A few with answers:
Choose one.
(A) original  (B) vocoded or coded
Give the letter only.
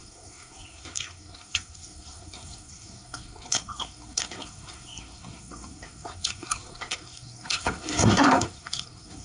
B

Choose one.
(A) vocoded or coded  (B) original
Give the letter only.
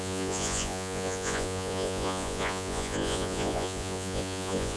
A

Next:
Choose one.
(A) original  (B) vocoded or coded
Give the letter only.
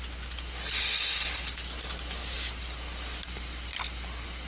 A